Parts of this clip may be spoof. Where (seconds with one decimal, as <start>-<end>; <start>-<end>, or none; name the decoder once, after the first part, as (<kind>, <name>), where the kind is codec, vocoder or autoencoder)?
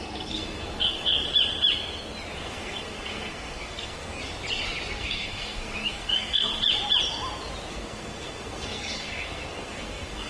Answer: 0.0-1.3 (codec, SNAC); 2.4-4.2; 4.9-6.5; 7.7-10.3